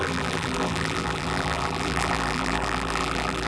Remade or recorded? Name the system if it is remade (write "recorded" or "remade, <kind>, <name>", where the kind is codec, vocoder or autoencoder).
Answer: remade, vocoder, BigVGAN v2